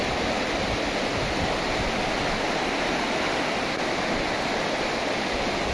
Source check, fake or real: real